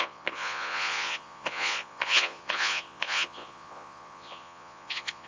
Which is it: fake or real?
fake